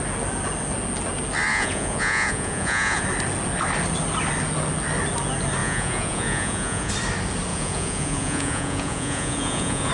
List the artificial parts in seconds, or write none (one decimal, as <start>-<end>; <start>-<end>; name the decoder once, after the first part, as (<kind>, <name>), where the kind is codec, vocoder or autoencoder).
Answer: 1.5-3.0 (vocoder, Vocos); 5.6-6.9; 7.5-9.9